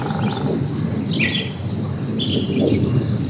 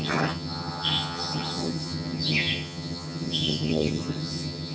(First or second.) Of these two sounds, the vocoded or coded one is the second